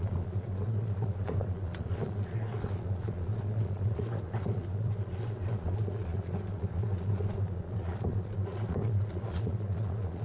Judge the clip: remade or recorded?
remade